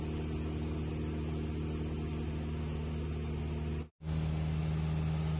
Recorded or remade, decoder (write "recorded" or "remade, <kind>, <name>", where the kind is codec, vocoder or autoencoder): recorded